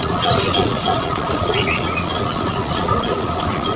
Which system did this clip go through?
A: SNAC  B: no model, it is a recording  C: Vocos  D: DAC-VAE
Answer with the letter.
C